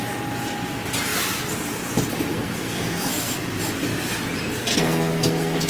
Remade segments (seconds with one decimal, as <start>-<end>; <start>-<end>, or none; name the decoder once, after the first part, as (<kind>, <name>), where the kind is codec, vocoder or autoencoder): 2.3-3.5 (codec, SNAC); 4.7-5.7